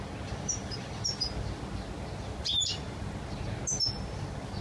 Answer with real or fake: real